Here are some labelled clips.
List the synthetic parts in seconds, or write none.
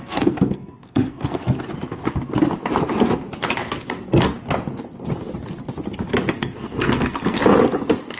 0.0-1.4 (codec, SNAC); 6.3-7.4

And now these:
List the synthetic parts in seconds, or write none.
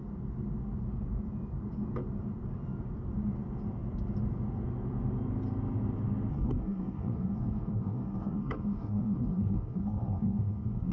6.3-10.9 (codec, SNAC)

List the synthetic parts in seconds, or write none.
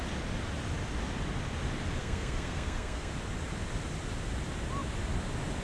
2.0-3.1 (codec, SNAC)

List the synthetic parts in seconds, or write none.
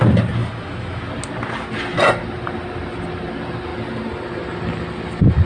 0.4-1.0 (autoencoder, DAC-VAE)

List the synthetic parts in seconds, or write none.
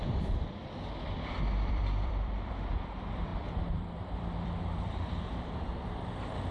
0.0-6.5 (vocoder, BigVGAN v2)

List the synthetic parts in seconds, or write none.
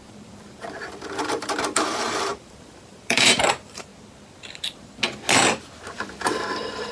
0.0-3.9 (vocoder, BigVGAN v2); 5.9-6.9